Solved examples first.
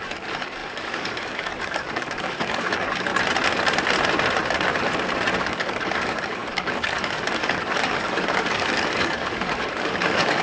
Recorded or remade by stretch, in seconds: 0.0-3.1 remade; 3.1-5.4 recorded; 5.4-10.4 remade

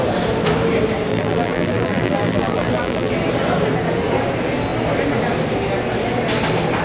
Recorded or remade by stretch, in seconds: 0.0-1.1 recorded; 1.1-3.1 remade; 3.1-6.8 recorded

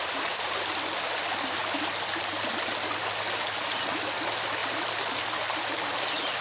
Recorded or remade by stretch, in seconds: 0.0-4.6 recorded; 4.6-6.4 remade

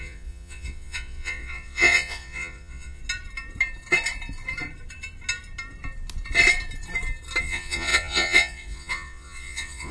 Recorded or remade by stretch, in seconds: 0.0-3.0 remade; 3.0-7.4 recorded; 7.4-9.9 remade

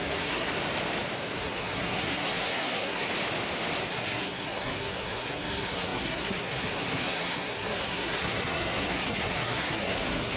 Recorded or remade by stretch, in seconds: 0.0-0.5 remade; 0.5-1.4 recorded; 1.4-3.1 remade; 3.1-3.9 recorded; 3.9-10.4 remade

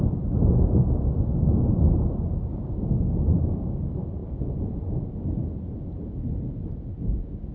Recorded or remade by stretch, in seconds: 0.0-2.5 recorded; 2.5-3.1 remade; 3.1-7.5 recorded